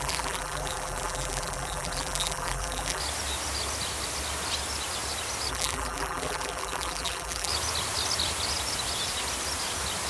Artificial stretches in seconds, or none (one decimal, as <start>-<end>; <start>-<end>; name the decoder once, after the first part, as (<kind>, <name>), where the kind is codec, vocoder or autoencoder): 0.0-3.0 (vocoder, BigVGAN v2); 5.5-7.5